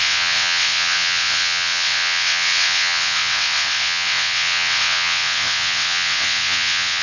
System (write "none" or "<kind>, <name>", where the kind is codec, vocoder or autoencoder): vocoder, WaveNeXt